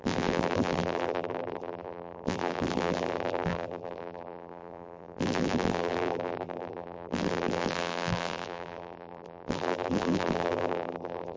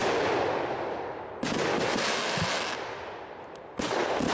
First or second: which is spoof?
first